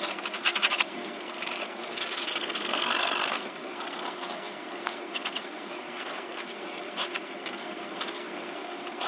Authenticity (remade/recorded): remade